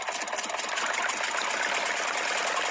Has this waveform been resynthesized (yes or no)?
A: no